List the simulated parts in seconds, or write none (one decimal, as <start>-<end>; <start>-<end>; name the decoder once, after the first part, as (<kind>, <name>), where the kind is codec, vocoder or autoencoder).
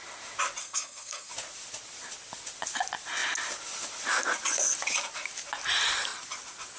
0.6-1.3 (codec, SNAC)